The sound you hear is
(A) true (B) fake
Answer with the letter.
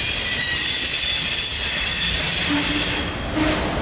A